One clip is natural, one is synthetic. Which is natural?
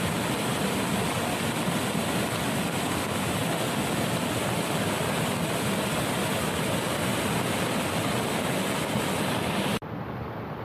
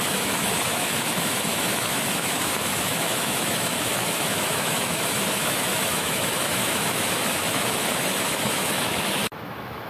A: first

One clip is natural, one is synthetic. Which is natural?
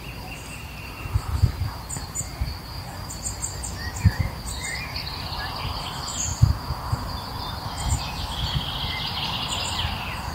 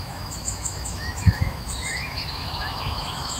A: first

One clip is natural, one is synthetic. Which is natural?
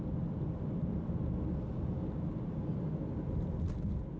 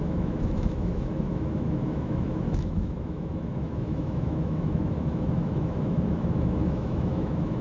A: first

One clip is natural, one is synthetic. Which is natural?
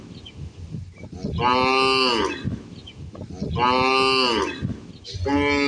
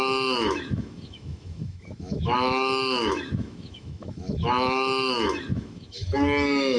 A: first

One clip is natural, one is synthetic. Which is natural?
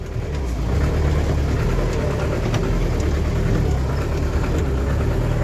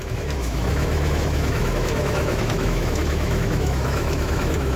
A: first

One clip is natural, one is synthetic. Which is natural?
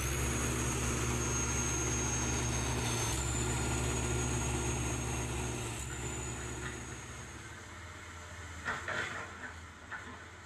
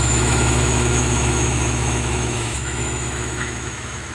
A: first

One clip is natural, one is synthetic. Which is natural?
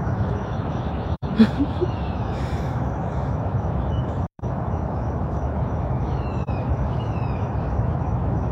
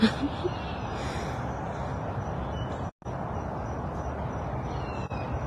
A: second